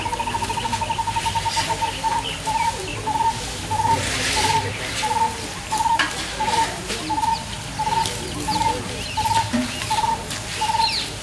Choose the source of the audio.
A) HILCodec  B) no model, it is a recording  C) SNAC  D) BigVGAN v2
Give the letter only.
B